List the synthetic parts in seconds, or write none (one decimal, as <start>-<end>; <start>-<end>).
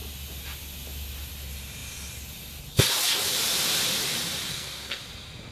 4.5-5.0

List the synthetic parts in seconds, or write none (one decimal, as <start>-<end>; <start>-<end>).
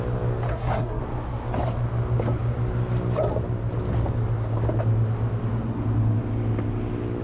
0.5-1.0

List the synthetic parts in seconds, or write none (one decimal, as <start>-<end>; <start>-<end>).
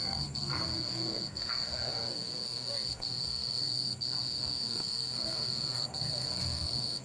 0.0-7.0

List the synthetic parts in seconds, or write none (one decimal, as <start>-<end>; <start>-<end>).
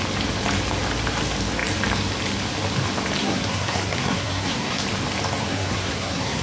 3.2-4.8; 5.4-6.4